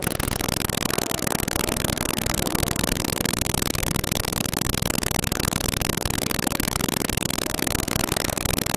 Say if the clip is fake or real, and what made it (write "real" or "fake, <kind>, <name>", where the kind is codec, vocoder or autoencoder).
fake, autoencoder, DAC-VAE